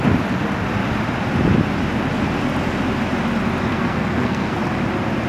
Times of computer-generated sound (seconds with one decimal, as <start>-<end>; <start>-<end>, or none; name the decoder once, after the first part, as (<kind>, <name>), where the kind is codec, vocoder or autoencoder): 3.7-4.6 (codec, SNAC)

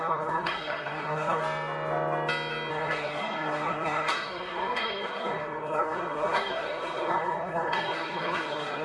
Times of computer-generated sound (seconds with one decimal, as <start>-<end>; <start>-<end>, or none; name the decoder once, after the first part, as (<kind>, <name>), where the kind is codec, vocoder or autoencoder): 0.0-1.4 (codec, SNAC); 2.7-8.8